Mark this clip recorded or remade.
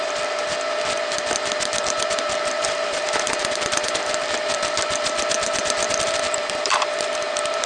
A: remade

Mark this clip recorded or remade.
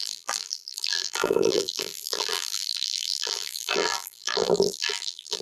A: remade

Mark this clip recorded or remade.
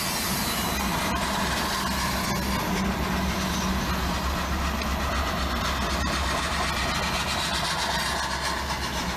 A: recorded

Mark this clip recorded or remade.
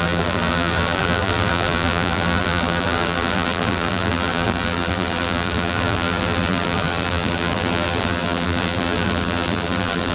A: remade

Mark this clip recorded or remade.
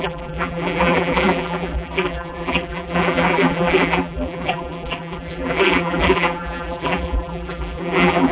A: remade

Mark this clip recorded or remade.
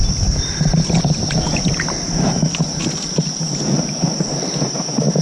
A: recorded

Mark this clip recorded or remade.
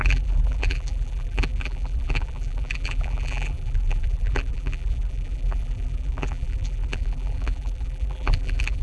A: remade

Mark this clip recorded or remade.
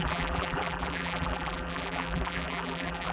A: remade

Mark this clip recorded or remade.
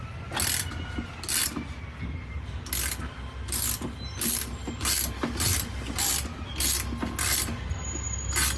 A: recorded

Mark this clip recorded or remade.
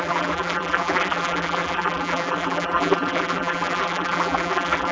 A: remade